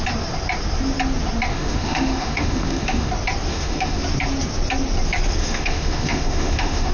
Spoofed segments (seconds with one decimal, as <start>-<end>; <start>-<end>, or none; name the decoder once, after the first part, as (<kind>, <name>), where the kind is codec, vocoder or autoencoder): 1.5-3.1 (autoencoder, DAC-VAE); 3.5-4.0; 5.4-6.9